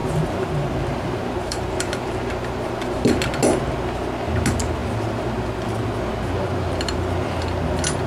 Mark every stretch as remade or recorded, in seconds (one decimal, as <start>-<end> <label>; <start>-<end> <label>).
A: 0.0-3.2 remade; 3.2-8.1 recorded